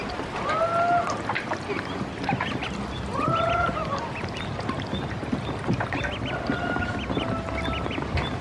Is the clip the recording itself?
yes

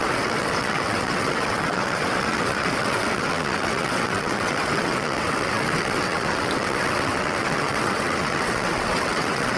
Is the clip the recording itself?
no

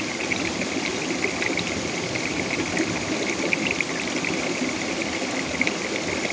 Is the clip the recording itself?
yes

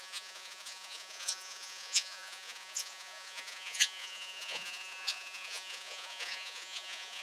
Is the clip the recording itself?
no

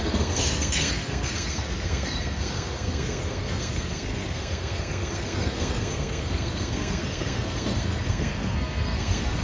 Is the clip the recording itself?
no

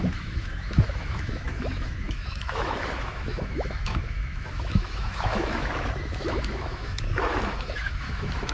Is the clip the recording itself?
no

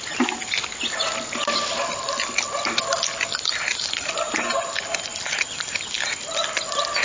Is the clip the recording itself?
yes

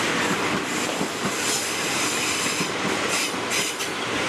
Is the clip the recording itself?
yes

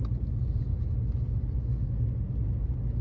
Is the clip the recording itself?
yes